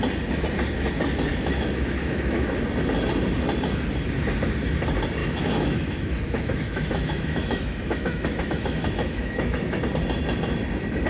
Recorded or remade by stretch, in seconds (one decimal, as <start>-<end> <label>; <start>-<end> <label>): 0.0-1.3 recorded; 1.3-2.5 remade; 2.5-5.2 recorded; 5.2-9.8 remade; 9.8-11.1 recorded